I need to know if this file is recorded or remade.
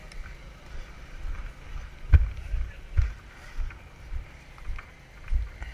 recorded